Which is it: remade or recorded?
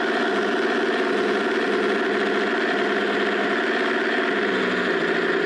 recorded